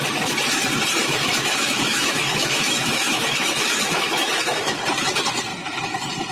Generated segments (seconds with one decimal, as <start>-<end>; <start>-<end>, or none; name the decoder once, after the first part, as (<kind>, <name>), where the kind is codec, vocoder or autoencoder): 1.0-4.8 (autoencoder, DAC-VAE)